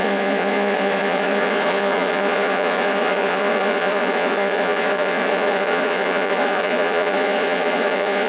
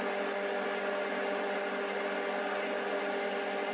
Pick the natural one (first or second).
second